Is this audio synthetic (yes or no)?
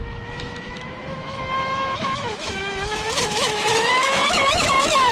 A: yes